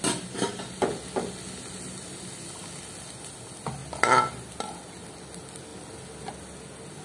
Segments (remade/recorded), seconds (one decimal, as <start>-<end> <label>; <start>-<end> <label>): 0.0-7.0 recorded